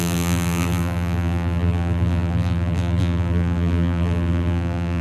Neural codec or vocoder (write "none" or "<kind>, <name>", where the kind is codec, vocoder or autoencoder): vocoder, BigVGAN v2